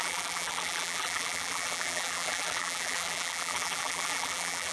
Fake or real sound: fake